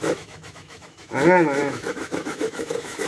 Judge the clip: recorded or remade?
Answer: remade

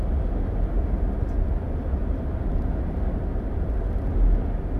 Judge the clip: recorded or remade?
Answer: recorded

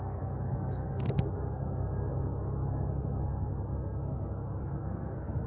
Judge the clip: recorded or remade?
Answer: remade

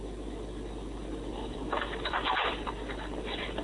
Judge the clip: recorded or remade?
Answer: remade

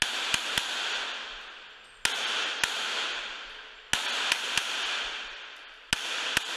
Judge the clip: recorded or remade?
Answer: recorded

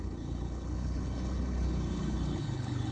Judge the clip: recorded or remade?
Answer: remade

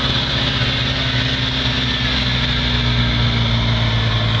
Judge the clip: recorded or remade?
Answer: recorded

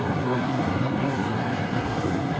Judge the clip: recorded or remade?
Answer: remade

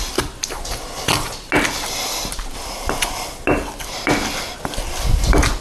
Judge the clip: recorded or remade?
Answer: recorded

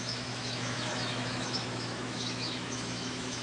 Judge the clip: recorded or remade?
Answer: remade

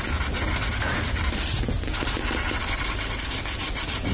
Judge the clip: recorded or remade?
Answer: recorded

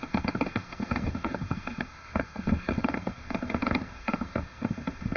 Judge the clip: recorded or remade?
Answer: remade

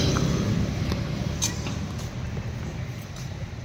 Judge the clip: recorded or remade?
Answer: remade